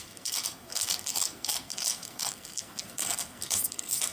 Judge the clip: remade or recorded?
remade